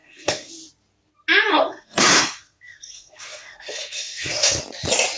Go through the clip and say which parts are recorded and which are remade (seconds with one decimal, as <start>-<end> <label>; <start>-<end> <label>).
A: 0.0-0.5 remade; 0.5-1.5 recorded; 1.5-4.6 remade; 4.6-5.2 recorded